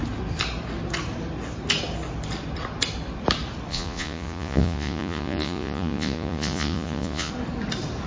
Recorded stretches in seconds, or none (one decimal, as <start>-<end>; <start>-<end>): 0.0-3.7; 7.3-8.1